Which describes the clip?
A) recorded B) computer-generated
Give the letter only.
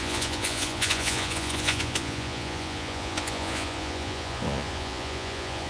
B